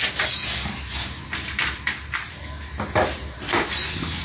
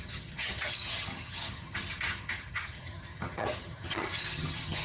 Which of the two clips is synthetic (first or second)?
second